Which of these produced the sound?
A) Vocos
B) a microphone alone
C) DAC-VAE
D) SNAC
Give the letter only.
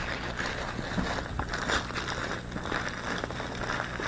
B